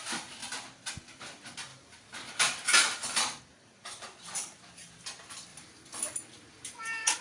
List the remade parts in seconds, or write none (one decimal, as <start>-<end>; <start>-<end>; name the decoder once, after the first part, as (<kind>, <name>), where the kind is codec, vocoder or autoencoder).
5.5-6.8 (vocoder, BigVGAN v2)